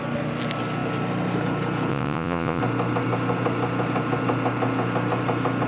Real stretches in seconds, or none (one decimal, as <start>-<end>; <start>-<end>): 0.0-1.9; 2.6-5.7